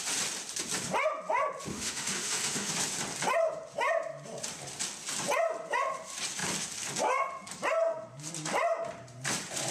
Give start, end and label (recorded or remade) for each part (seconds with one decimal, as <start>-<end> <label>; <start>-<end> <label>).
0.0-1.7 recorded; 1.7-2.7 remade; 2.7-9.7 recorded